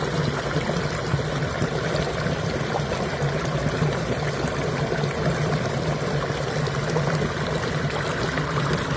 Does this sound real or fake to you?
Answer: real